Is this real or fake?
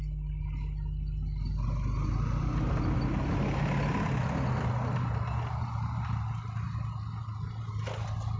real